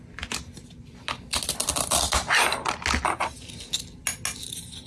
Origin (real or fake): real